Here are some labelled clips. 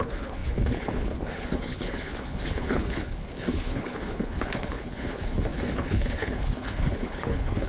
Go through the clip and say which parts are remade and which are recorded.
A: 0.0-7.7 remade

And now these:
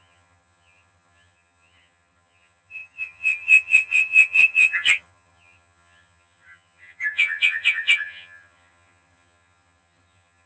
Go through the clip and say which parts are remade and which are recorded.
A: 0.0-10.5 remade

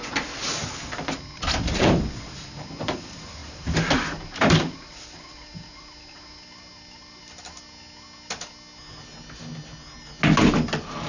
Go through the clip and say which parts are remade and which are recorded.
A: 0.0-3.4 recorded; 3.4-7.2 remade; 7.2-11.1 recorded

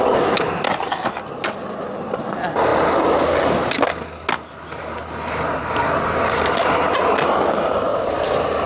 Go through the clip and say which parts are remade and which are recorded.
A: 0.0-1.6 recorded; 1.6-2.2 remade; 2.2-7.9 recorded; 7.9-8.7 remade

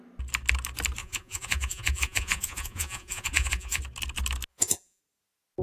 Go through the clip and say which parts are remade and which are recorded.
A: 0.0-1.0 recorded; 1.0-3.8 remade; 3.8-4.5 recorded; 4.5-5.0 remade; 5.0-5.6 recorded